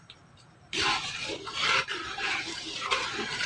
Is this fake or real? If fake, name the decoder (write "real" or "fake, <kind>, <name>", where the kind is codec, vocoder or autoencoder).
fake, vocoder, BigVGAN v2